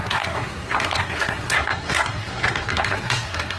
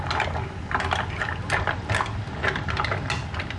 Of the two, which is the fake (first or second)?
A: first